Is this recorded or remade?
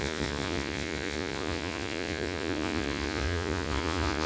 remade